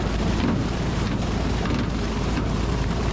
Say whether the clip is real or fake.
fake